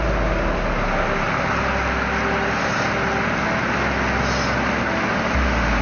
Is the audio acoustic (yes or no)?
yes